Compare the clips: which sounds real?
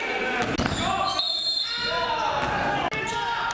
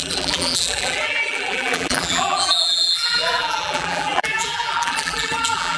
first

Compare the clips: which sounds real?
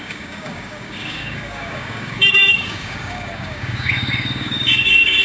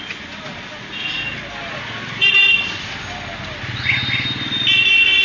second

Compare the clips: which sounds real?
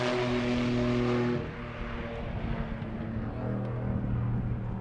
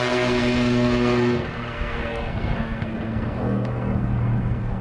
first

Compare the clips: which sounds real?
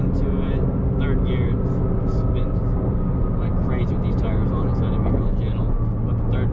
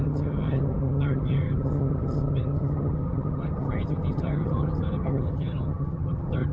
first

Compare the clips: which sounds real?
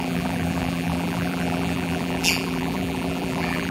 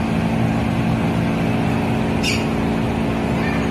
second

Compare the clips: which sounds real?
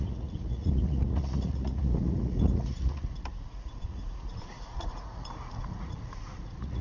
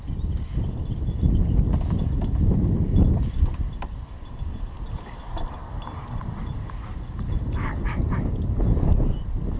second